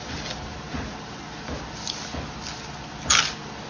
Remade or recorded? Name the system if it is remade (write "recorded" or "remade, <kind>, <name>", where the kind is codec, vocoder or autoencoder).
recorded